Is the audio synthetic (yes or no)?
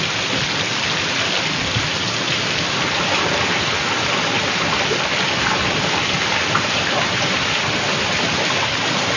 no